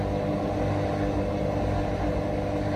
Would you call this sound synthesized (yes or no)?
no